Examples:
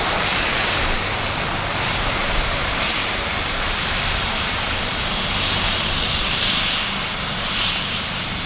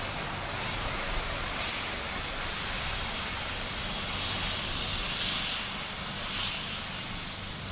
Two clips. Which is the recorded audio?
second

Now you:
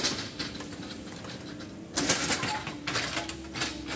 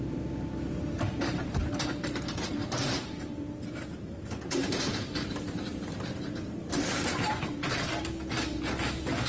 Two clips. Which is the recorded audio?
first